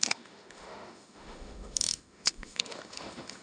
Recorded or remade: remade